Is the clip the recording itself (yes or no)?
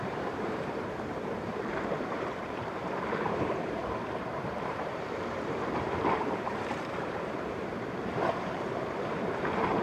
no